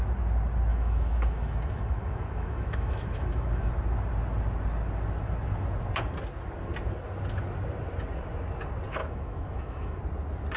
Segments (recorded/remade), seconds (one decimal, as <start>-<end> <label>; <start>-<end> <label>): 0.0-0.7 recorded; 0.7-3.7 remade; 3.7-9.0 recorded; 9.0-10.0 remade; 10.0-10.6 recorded